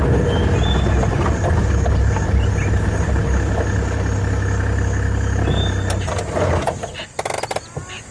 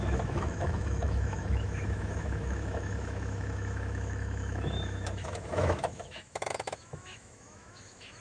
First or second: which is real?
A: first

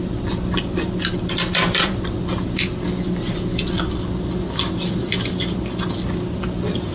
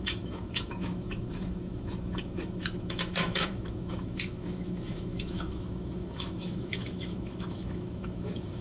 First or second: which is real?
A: first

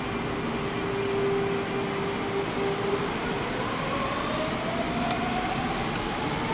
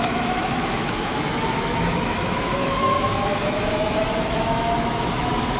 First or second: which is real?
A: first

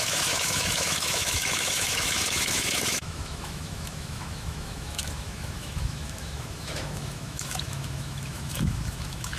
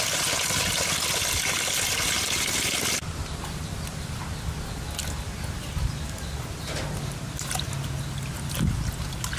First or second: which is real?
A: second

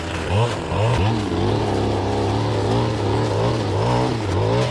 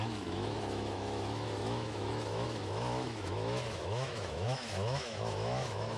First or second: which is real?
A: first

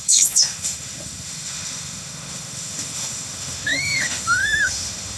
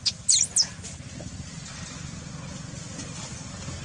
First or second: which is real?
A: second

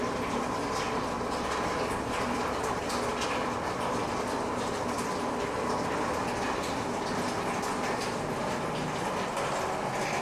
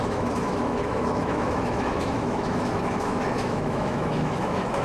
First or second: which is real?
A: first